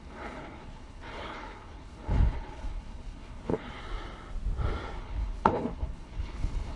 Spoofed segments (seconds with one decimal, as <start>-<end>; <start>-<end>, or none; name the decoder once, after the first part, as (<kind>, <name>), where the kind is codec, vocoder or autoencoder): 0.0-3.8 (codec, HILCodec); 5.0-6.8